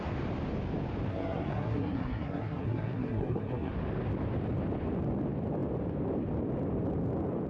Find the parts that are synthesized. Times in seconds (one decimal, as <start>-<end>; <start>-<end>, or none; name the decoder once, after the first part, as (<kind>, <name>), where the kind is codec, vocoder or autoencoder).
1.1-3.7 (codec, SNAC)